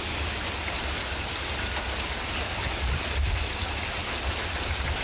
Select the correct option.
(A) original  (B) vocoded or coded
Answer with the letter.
A